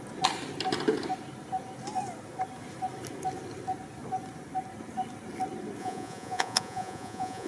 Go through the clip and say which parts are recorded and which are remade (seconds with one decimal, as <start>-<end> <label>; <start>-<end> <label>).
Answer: 0.0-5.8 recorded; 5.8-7.5 remade